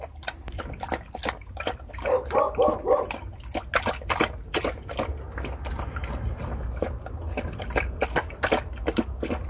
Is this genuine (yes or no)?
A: yes